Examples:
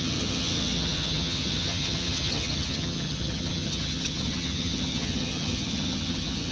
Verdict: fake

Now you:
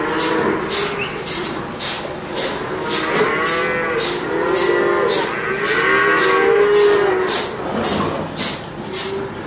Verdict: real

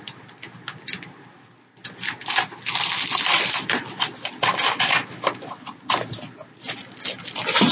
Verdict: real